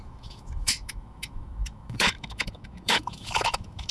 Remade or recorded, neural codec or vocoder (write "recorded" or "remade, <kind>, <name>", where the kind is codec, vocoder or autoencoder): remade, autoencoder, DAC-VAE